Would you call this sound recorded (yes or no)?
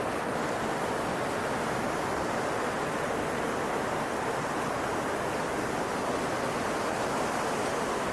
yes